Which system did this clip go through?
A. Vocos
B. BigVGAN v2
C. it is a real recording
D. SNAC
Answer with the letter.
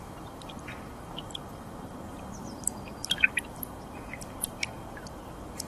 B